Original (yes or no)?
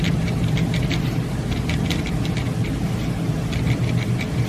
no